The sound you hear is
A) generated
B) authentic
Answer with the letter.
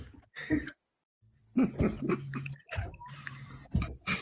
B